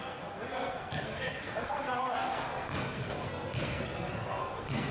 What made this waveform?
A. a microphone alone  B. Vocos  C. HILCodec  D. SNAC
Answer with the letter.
D